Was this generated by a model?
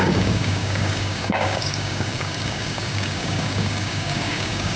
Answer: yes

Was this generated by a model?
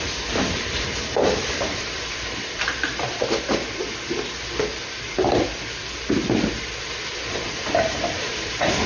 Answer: yes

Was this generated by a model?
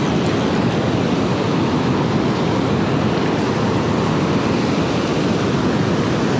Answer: no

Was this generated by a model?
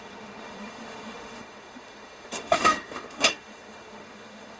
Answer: yes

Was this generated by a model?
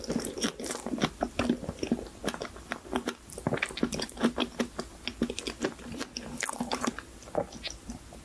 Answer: no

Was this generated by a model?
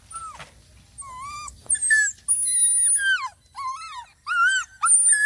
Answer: no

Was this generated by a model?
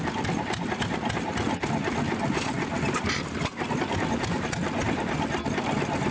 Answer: no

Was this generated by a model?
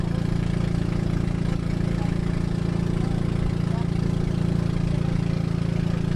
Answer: no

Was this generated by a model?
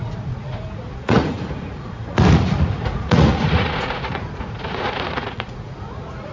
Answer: yes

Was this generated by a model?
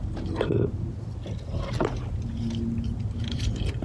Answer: no